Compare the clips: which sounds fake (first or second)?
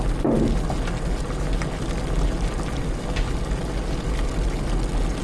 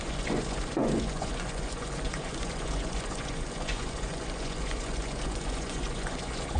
second